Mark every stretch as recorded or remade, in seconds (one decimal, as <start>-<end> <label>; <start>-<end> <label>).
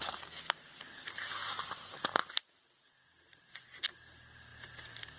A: 0.0-5.2 recorded